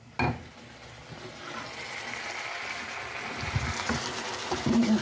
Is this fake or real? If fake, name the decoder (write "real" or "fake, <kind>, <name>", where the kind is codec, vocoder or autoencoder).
real